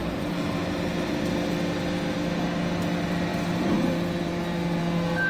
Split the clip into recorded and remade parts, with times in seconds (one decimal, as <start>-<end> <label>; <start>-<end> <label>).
0.0-1.1 remade; 1.1-3.3 recorded; 3.3-4.8 remade; 4.8-5.3 recorded